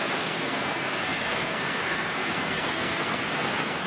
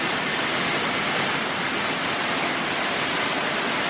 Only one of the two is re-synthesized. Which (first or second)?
first